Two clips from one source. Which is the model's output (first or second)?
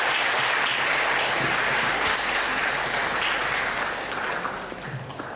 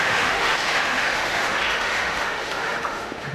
second